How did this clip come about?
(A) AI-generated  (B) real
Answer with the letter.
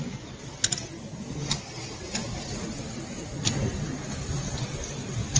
B